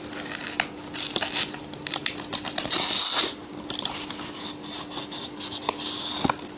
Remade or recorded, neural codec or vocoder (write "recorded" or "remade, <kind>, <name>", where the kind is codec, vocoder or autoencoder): recorded